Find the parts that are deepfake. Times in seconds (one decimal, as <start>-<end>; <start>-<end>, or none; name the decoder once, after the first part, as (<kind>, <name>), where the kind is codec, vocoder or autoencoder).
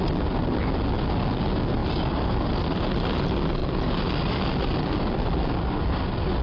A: none